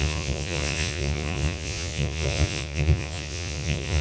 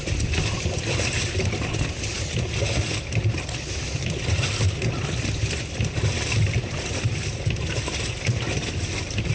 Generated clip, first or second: first